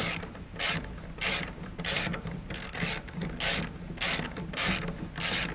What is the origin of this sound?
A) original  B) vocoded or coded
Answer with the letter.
A